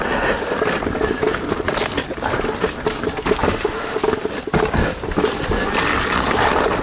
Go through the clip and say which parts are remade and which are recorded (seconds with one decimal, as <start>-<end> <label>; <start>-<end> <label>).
0.0-3.4 recorded; 3.4-4.0 remade; 4.0-6.8 recorded